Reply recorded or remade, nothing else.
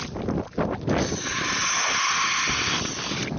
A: recorded